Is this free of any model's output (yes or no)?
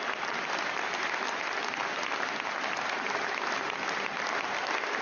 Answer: no